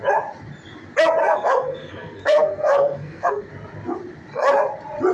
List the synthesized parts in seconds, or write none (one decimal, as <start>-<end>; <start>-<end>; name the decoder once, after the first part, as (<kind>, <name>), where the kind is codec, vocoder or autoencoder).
1.2-3.5 (codec, SNAC)